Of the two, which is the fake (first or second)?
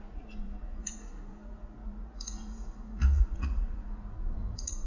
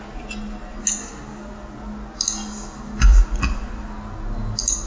first